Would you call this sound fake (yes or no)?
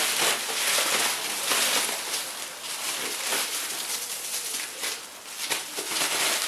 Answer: no